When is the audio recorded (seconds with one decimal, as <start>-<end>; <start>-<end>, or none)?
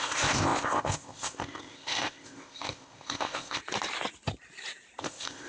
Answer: 3.6-5.0